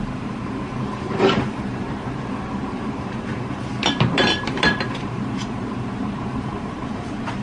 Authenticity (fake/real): fake